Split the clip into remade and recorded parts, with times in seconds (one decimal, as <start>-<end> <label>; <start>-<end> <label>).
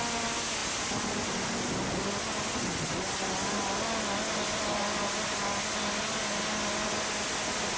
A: 0.0-7.8 recorded